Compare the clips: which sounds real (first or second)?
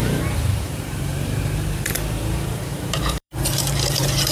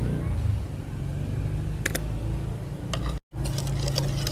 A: second